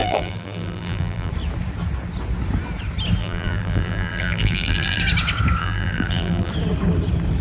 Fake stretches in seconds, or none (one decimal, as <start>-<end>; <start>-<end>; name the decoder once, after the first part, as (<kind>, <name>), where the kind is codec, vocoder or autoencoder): 0.0-1.3 (vocoder, BigVGAN v2); 3.2-5.0; 5.6-6.5